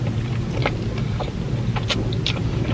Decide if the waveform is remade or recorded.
recorded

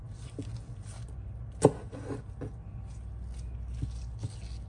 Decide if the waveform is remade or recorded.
recorded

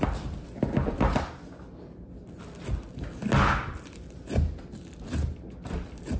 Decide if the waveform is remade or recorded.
recorded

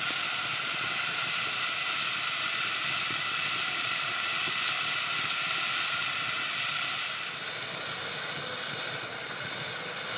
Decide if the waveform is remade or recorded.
recorded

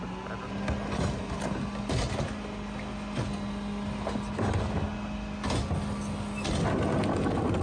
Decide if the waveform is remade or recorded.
recorded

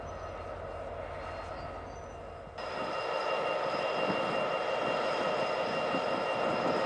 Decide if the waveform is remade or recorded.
recorded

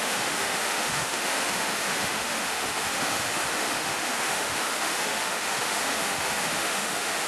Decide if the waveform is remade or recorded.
remade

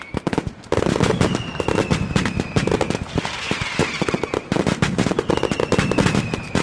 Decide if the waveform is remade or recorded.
recorded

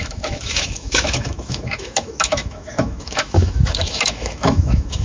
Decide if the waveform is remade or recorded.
remade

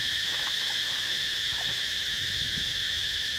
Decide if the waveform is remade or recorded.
remade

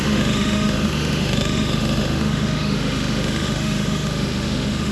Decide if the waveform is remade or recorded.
remade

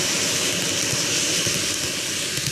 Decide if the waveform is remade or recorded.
recorded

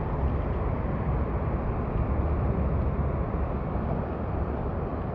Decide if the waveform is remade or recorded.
recorded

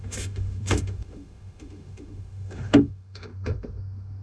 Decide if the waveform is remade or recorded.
remade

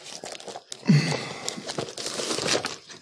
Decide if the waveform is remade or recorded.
recorded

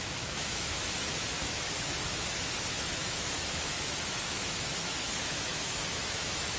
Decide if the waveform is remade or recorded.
remade